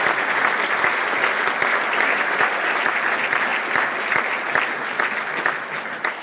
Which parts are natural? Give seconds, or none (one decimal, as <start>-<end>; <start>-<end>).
0.0-6.2